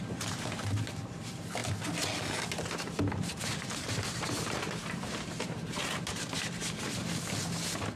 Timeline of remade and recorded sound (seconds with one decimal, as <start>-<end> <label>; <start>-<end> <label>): 0.0-1.6 remade; 1.6-3.2 recorded; 3.2-6.6 remade; 6.6-8.0 recorded